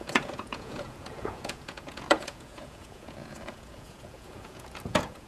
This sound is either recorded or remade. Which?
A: remade